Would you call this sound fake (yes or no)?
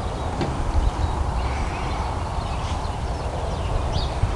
no